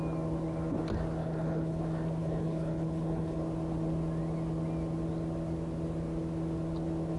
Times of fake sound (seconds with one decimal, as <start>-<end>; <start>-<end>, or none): 1.2-1.8; 2.2-3.4